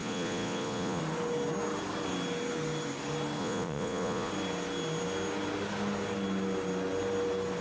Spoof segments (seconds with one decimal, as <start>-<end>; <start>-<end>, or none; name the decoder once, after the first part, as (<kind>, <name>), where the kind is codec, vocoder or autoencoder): 0.0-1.0 (vocoder, Vocos); 3.4-4.3